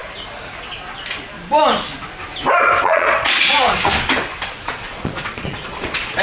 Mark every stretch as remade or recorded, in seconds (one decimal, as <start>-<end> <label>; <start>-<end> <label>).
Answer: 0.0-2.8 recorded; 2.8-3.9 remade; 3.9-4.6 recorded; 4.6-6.2 remade